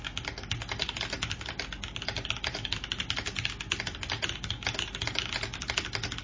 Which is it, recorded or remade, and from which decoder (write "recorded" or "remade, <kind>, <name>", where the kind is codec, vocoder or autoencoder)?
recorded